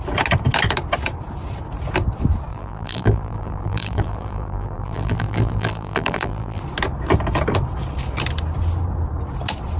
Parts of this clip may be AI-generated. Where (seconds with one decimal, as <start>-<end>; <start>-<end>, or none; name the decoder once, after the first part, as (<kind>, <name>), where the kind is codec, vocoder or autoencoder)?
2.5-6.6 (vocoder, BigVGAN v2)